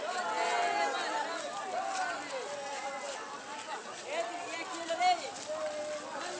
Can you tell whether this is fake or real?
real